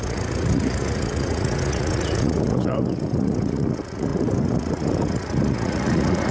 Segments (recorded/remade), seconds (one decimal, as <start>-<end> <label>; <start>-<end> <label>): 0.0-6.3 remade